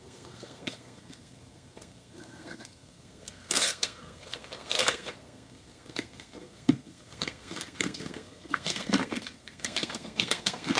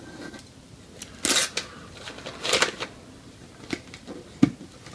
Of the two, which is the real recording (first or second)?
second